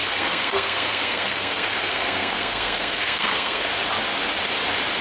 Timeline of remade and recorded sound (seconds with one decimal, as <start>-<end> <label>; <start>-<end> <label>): 0.0-3.7 remade; 3.7-5.0 recorded